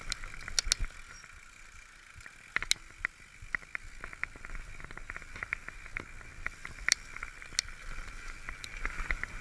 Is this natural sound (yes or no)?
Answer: yes